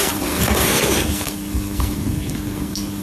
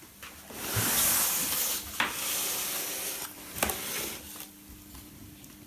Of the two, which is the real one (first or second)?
second